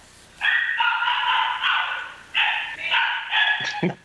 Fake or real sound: real